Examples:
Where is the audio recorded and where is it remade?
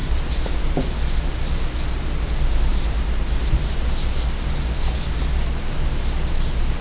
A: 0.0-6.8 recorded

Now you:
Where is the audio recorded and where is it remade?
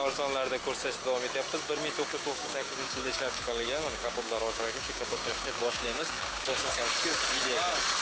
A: 0.0-2.1 recorded; 2.1-6.9 remade; 6.9-8.0 recorded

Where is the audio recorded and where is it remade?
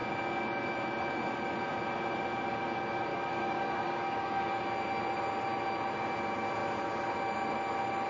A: 0.0-3.1 recorded; 3.1-4.6 remade; 4.6-8.1 recorded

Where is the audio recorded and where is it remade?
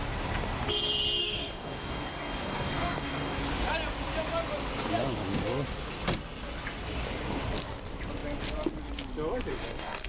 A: 0.0-1.2 recorded; 1.2-3.4 remade; 3.4-9.5 recorded; 9.5-10.1 remade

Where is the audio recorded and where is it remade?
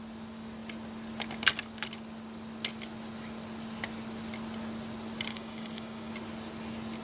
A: 0.0-5.3 recorded; 5.3-6.1 remade; 6.1-7.0 recorded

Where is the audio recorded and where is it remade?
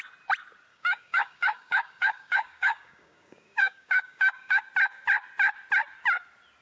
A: 0.0-0.7 recorded; 0.7-4.6 remade; 4.6-6.6 recorded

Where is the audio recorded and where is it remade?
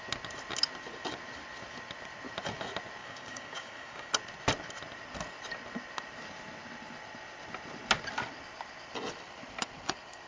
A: 0.0-3.0 recorded; 3.0-4.1 remade; 4.1-10.3 recorded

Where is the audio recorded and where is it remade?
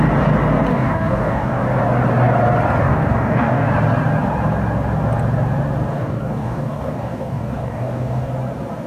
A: 0.0-0.7 recorded; 0.7-1.6 remade; 1.6-2.8 recorded; 2.8-3.7 remade; 3.7-5.9 recorded; 5.9-8.3 remade; 8.3-8.9 recorded